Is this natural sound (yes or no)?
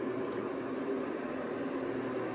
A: yes